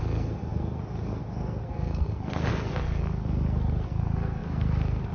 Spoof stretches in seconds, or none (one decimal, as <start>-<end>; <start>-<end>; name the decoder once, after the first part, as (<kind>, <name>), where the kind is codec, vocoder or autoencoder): 0.0-5.1 (codec, SNAC)